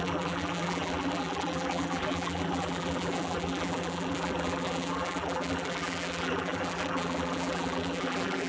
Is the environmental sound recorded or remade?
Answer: remade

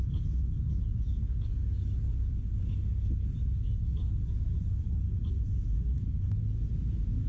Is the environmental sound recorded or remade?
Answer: recorded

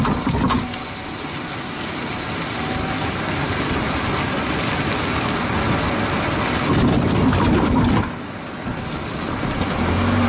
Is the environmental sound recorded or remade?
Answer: recorded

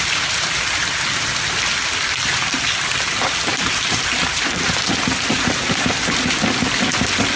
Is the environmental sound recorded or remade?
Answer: recorded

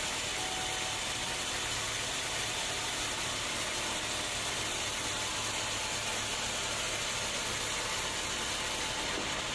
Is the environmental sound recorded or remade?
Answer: recorded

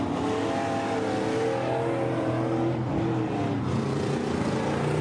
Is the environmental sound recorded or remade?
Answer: recorded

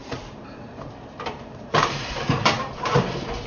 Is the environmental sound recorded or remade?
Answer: remade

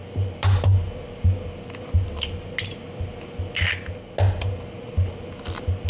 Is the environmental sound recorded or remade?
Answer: recorded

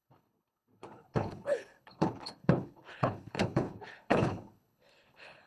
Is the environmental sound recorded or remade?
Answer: remade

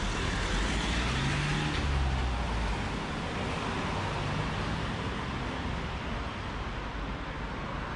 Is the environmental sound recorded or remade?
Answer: recorded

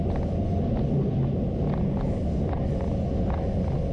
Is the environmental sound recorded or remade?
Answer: recorded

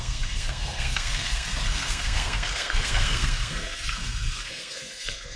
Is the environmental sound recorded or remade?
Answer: remade